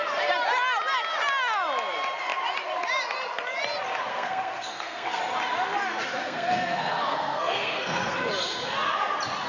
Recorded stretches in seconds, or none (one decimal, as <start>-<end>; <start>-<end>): 0.0-4.1; 5.2-6.2; 8.3-9.5